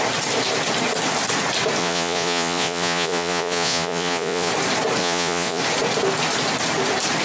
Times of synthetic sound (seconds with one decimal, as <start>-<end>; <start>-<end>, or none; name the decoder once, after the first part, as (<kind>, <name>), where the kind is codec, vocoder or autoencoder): 1.8-4.5 (vocoder, Vocos); 5.0-5.6